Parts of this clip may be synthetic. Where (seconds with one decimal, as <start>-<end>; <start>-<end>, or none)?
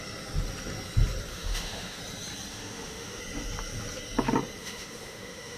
1.3-2.0; 2.5-3.2; 4.6-5.6